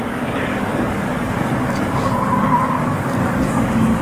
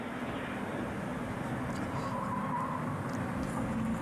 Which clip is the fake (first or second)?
first